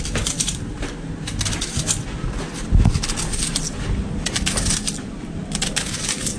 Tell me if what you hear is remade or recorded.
recorded